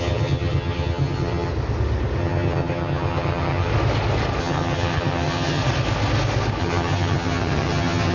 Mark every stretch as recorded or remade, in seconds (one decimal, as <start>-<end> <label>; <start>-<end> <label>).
0.0-1.5 remade; 1.5-2.2 recorded; 2.2-3.7 remade; 3.7-4.4 recorded; 4.4-5.6 remade; 5.6-6.6 recorded; 6.6-8.1 remade